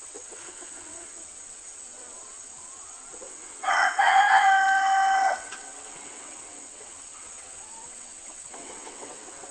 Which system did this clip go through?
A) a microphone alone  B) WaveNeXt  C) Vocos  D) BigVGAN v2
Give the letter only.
B